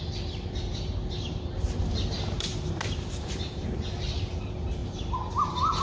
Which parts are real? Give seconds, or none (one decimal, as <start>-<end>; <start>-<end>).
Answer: 0.0-0.7; 3.7-4.8